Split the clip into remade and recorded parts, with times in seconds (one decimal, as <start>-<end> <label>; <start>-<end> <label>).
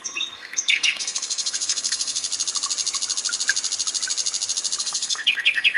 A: 0.0-2.3 remade; 2.3-4.8 recorded; 4.8-5.8 remade